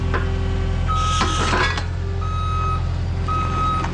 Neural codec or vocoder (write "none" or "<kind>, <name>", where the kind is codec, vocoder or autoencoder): none